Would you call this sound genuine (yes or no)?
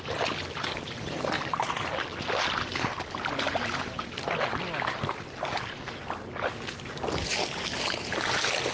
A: yes